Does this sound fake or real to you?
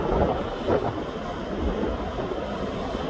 real